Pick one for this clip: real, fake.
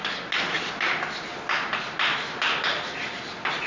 real